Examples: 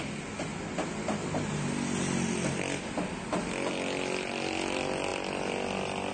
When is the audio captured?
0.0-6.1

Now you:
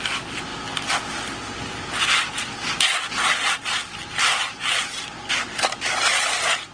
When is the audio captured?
0.0-6.7